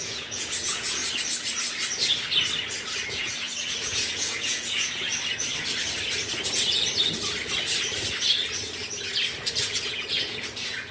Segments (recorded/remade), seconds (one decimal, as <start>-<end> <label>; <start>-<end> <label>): 0.0-1.0 remade; 1.0-3.1 recorded; 3.1-5.1 remade; 5.1-9.6 recorded; 9.6-10.9 remade